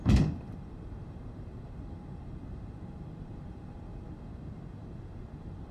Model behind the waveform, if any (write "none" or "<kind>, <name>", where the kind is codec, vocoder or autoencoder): vocoder, BigVGAN v2